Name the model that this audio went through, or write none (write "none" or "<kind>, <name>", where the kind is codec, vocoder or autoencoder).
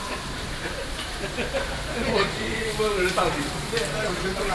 vocoder, BigVGAN v2